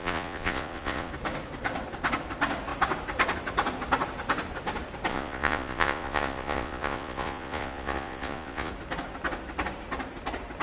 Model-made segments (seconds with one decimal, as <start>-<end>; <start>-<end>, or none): 0.0-1.1; 5.1-8.7